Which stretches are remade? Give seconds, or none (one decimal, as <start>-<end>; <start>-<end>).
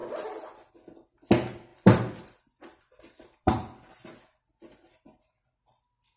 1.7-3.9